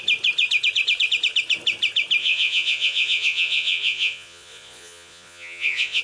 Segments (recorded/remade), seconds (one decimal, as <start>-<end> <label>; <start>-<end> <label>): 0.0-2.2 recorded; 2.2-6.0 remade